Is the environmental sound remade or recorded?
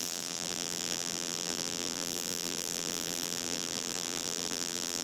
remade